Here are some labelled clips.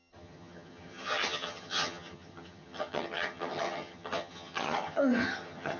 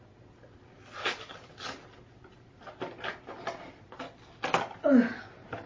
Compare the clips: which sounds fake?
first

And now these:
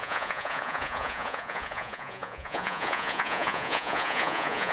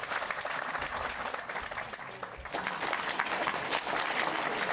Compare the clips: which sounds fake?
first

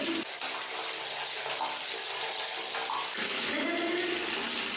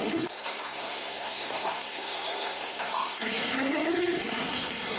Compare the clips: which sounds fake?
second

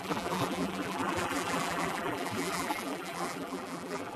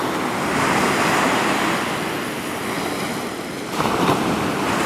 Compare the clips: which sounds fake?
first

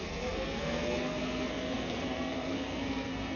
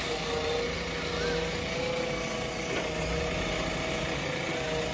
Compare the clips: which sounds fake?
first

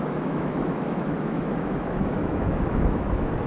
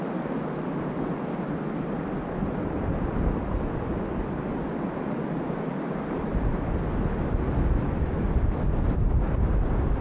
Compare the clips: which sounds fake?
first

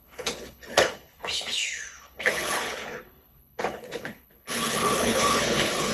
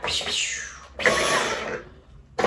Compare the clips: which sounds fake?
first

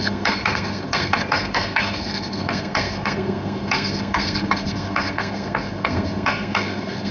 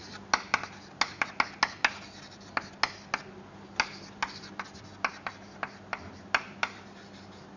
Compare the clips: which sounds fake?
first